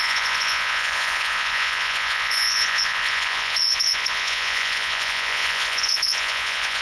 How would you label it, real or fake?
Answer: fake